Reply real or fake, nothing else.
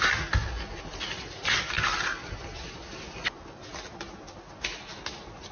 real